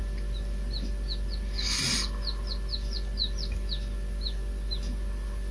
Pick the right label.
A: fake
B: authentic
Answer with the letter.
B